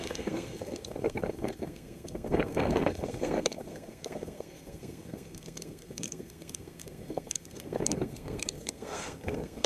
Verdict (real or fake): fake